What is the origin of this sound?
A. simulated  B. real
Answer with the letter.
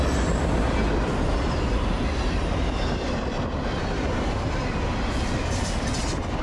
B